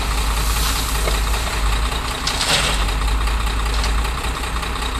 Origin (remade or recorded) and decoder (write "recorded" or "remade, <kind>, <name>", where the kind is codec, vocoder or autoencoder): recorded